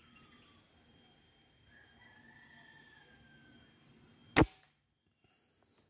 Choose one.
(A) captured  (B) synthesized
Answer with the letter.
A